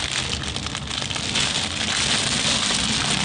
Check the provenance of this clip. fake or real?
real